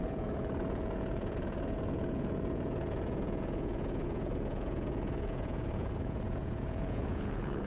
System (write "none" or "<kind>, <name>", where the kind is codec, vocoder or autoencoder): vocoder, Vocos